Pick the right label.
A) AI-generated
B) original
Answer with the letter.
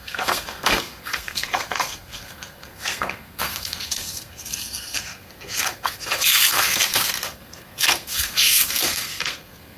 A